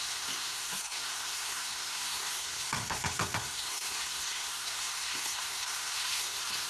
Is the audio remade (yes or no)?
yes